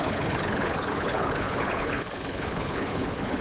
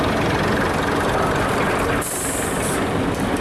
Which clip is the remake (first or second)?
first